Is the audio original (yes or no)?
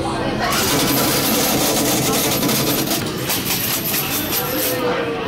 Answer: yes